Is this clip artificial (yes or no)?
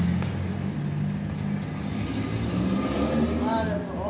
no